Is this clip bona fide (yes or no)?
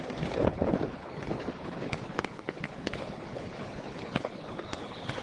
no